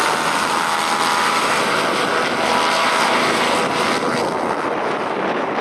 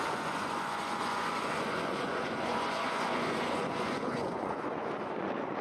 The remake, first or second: second